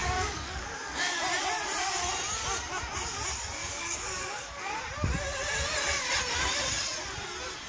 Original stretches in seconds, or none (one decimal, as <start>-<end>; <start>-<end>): 1.2-3.6; 4.7-7.7